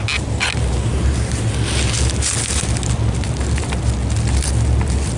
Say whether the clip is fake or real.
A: real